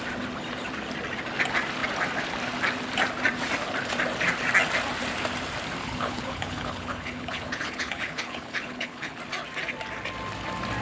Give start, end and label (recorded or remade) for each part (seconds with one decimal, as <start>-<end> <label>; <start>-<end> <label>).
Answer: 0.0-5.8 recorded; 5.8-9.2 remade; 9.2-10.8 recorded